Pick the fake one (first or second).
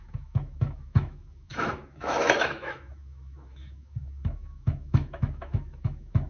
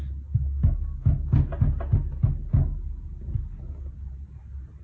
first